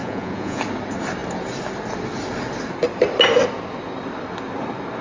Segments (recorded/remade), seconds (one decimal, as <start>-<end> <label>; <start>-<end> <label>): 0.0-0.6 remade; 0.6-5.0 recorded